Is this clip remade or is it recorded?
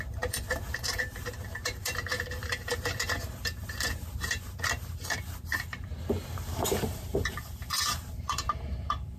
remade